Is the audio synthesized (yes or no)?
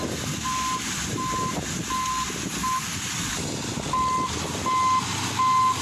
no